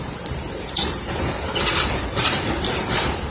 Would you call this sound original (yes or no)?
no